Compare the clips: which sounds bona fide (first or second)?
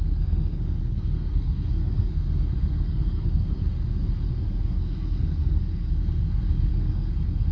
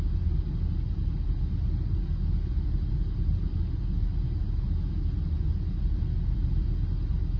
second